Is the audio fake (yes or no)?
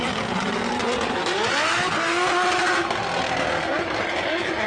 no